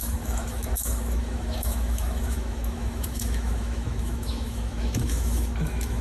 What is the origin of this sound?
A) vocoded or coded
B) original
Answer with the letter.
A